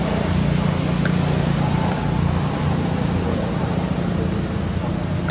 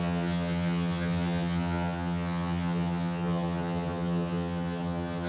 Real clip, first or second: first